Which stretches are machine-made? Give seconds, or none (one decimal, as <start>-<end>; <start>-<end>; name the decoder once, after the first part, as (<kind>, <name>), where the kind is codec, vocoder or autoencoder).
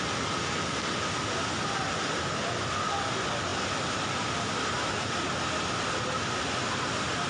none